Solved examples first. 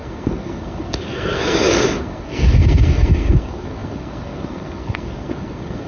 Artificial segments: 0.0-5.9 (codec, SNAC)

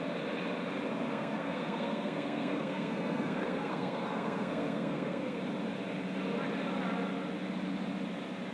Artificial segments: 1.1-5.4 (codec, SNAC)

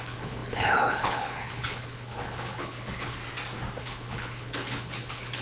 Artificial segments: 0.0-3.2 (codec, HILCodec); 3.8-5.4